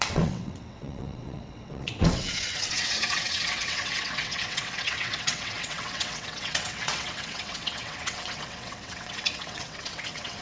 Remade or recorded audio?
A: remade